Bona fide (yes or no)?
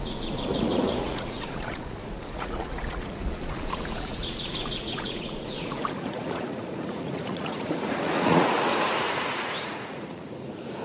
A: no